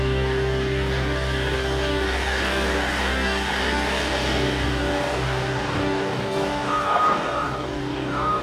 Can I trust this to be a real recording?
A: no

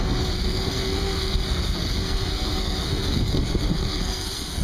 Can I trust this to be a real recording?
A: no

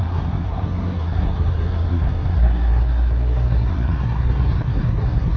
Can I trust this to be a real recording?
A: no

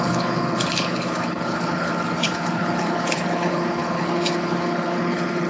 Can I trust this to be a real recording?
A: no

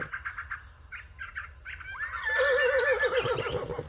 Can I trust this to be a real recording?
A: yes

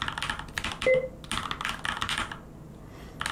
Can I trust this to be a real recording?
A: yes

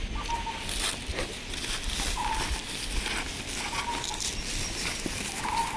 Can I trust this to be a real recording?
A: yes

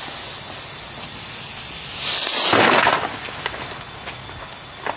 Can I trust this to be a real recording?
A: yes